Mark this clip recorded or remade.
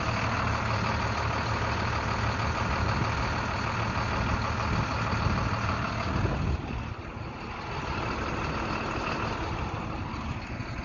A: recorded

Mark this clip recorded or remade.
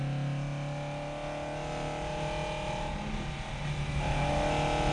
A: recorded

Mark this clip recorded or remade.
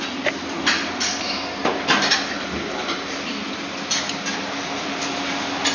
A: recorded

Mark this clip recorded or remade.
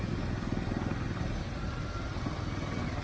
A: recorded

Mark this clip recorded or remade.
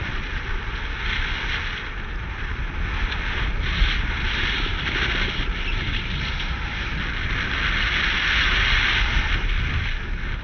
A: recorded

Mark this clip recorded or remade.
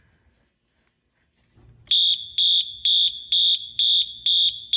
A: recorded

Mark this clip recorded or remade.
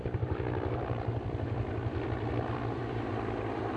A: remade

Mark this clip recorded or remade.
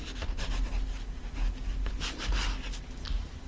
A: recorded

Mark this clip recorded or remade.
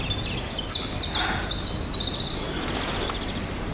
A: recorded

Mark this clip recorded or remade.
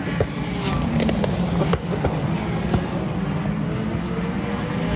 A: recorded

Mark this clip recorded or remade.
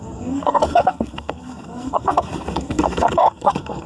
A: remade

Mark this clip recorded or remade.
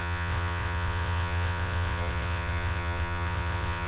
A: remade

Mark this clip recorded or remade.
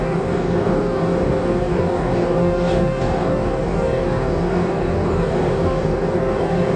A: remade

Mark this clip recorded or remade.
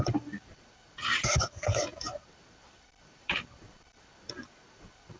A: remade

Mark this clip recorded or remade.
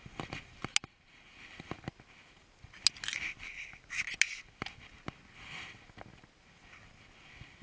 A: recorded